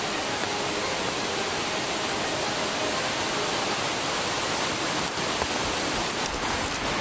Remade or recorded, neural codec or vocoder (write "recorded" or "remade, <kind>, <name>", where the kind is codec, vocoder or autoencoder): remade, vocoder, BigVGAN v2